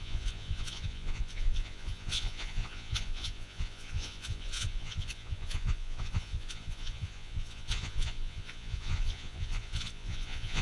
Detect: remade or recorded remade